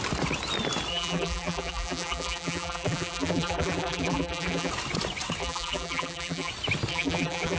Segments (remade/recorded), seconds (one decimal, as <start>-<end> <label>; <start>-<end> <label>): 0.0-0.9 recorded; 0.9-4.7 remade; 4.7-5.4 recorded; 5.4-6.5 remade; 6.5-6.9 recorded; 6.9-7.6 remade

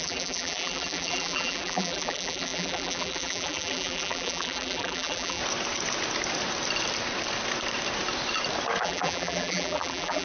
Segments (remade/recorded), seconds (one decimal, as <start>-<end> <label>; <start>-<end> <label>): 0.0-5.4 remade; 5.4-8.8 recorded; 8.8-10.2 remade

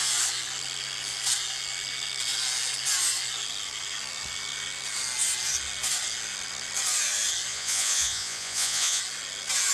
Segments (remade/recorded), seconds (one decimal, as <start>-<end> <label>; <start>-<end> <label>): 0.0-7.5 recorded; 7.5-9.0 remade; 9.0-9.7 recorded

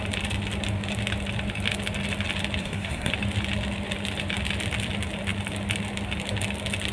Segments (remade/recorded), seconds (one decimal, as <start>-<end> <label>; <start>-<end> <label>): 0.0-2.6 recorded; 2.6-3.1 remade; 3.1-6.9 recorded

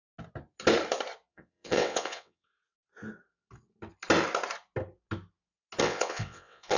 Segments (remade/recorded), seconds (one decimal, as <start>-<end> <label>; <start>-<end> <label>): 0.0-1.3 recorded; 1.3-2.5 remade; 2.5-5.8 recorded; 5.8-6.8 remade